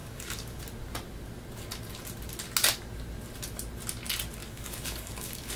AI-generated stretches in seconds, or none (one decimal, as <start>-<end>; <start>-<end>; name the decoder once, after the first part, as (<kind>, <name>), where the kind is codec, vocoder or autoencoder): 0.0-0.6 (codec, DAC); 4.4-5.6